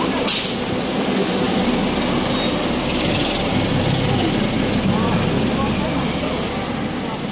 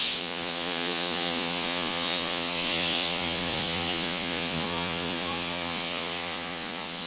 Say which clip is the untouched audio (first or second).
first